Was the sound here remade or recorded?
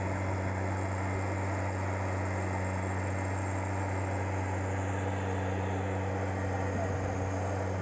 recorded